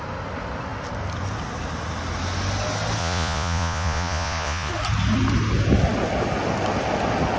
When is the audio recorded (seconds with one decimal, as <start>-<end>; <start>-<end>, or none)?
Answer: 0.0-3.0; 4.7-7.4